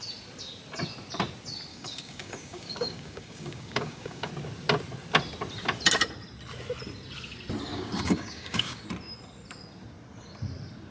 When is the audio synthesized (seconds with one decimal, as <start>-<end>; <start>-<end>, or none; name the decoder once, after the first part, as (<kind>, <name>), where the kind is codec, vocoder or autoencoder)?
1.7-4.3 (codec, DAC); 7.7-8.8